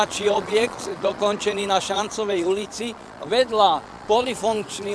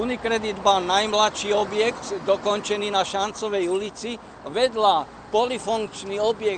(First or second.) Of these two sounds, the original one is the second